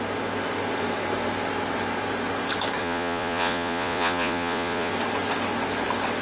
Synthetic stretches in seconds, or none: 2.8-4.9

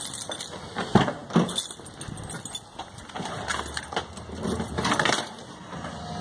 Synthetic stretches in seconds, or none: none